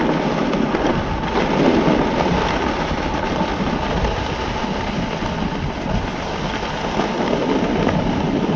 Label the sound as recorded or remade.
recorded